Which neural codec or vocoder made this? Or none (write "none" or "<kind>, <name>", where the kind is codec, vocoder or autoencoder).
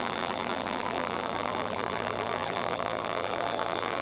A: vocoder, BigVGAN v2